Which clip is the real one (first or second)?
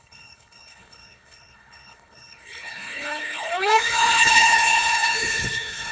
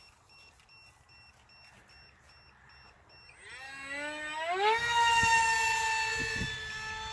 second